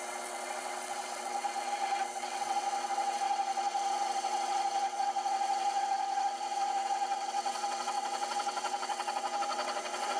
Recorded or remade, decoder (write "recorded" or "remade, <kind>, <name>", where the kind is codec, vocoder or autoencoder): remade, vocoder, WaveNeXt